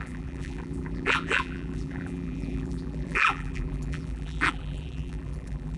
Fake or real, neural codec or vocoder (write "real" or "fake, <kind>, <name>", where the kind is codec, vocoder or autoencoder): fake, vocoder, BigVGAN v2